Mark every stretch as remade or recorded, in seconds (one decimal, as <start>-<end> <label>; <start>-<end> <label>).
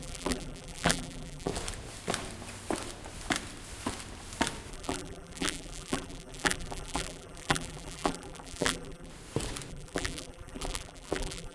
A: 0.0-1.5 remade; 1.5-4.7 recorded; 4.7-9.1 remade; 9.1-9.7 recorded; 9.7-11.5 remade